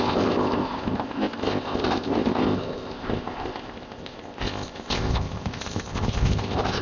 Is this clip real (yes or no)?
no